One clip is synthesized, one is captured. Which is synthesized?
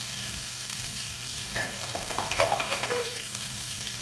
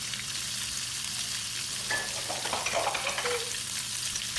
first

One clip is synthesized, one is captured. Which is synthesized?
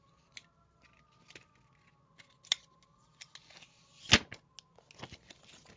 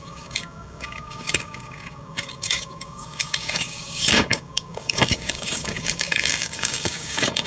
second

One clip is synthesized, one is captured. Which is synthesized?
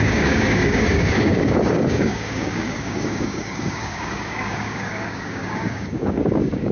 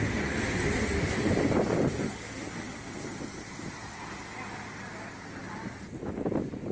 first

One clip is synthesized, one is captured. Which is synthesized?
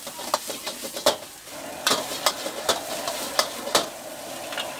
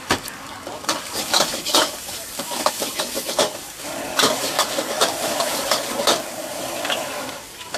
second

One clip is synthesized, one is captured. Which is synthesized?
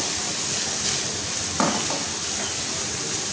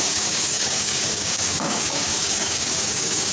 second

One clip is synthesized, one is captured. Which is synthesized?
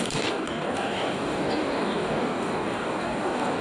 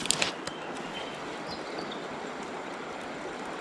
first